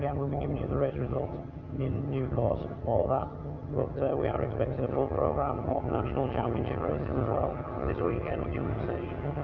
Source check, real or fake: fake